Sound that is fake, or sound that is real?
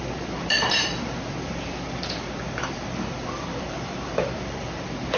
fake